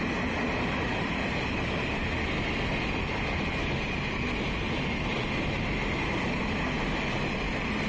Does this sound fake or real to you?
real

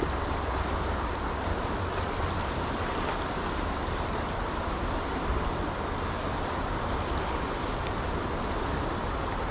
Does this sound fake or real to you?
real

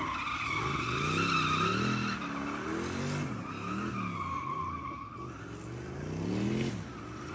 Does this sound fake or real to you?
real